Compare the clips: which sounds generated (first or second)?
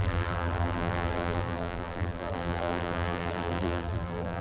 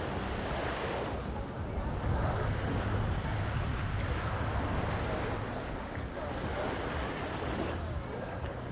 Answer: first